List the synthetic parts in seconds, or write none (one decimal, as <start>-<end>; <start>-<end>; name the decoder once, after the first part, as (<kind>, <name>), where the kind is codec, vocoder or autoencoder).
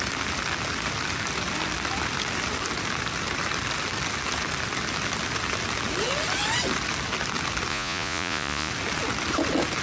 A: 7.7-8.7 (vocoder, Vocos)